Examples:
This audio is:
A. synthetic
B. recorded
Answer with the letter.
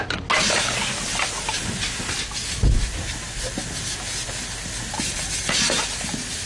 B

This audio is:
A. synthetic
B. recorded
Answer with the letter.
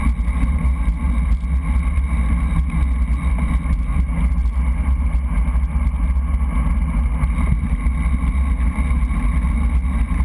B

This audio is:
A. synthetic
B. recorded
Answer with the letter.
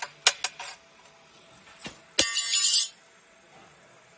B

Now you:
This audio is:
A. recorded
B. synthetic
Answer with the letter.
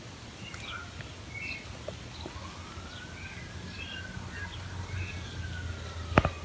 A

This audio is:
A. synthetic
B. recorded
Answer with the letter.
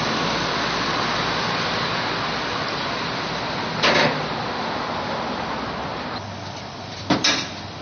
B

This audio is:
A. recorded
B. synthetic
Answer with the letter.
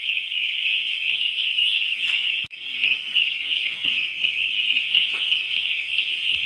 B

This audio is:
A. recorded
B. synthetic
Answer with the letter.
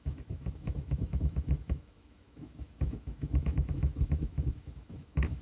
B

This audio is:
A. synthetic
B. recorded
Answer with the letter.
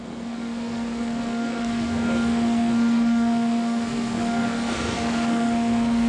A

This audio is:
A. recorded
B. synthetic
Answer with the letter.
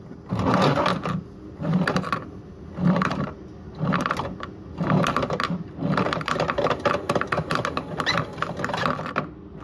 A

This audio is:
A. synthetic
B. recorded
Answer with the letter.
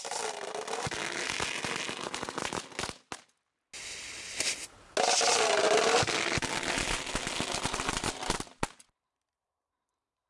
B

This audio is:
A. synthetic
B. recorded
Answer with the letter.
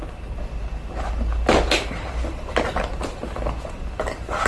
B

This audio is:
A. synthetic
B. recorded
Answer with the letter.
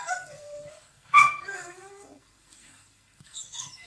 A